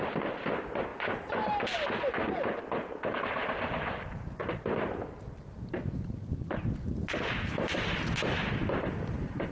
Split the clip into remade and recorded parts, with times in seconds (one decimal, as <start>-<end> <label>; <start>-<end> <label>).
0.0-9.5 recorded